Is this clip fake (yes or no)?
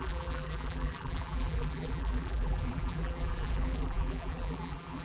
yes